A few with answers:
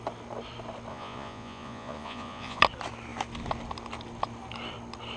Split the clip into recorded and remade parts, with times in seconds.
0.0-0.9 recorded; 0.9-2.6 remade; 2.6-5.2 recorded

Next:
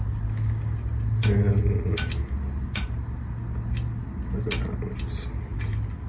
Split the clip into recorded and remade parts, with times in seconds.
0.0-6.1 recorded

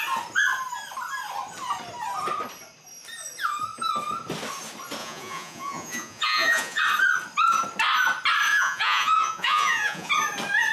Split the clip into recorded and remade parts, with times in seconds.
0.0-5.0 recorded; 5.0-6.8 remade; 6.8-8.5 recorded; 8.5-10.1 remade; 10.1-10.7 recorded

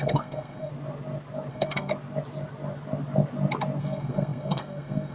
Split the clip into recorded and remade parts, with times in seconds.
0.0-0.7 remade; 0.7-1.5 recorded; 1.5-1.9 remade; 1.9-3.8 recorded; 3.8-5.1 remade

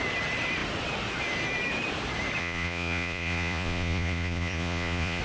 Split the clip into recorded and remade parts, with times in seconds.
0.0-2.4 recorded; 2.4-5.2 remade

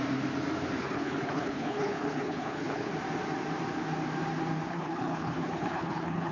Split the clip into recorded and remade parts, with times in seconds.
0.0-0.8 recorded; 0.8-2.9 remade; 2.9-4.7 recorded; 4.7-6.3 remade

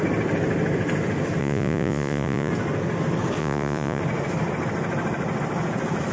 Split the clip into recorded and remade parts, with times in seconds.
0.0-1.4 recorded; 1.4-2.5 remade; 2.5-3.4 recorded; 3.4-4.0 remade; 4.0-6.1 recorded